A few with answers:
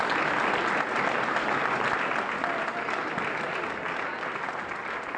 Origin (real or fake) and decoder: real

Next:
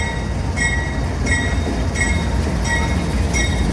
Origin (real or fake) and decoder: real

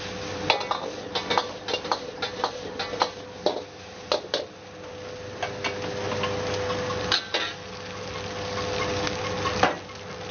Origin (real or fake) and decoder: real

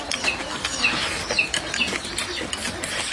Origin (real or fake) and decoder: real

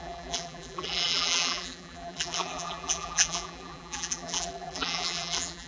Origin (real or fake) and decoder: fake, vocoder, BigVGAN v2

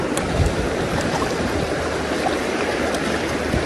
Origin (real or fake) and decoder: fake, vocoder, BigVGAN v2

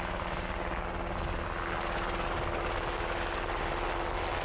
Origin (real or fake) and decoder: real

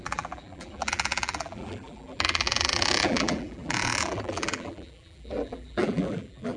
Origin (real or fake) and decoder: fake, vocoder, BigVGAN v2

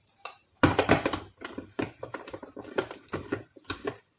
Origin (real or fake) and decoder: fake, vocoder, BigVGAN v2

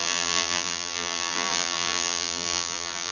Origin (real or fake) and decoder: fake, vocoder, BigVGAN v2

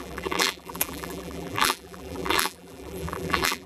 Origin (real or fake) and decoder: fake, vocoder, BigVGAN v2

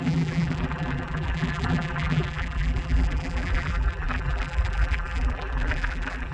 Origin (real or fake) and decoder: fake, vocoder, BigVGAN v2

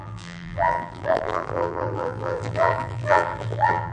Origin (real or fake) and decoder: fake, vocoder, BigVGAN v2